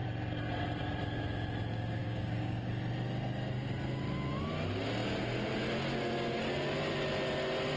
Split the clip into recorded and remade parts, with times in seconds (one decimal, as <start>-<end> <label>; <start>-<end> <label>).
0.0-2.0 recorded; 2.0-2.7 remade; 2.7-7.8 recorded